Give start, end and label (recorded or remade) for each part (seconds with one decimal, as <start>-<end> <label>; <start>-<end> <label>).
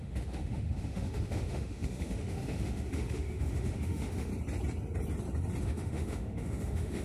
0.0-4.3 remade; 4.3-5.6 recorded; 5.6-7.0 remade